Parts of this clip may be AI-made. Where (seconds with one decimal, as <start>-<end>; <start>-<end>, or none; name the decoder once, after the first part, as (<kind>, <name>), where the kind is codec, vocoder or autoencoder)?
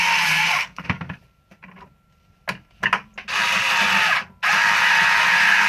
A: 0.6-1.2 (codec, SNAC)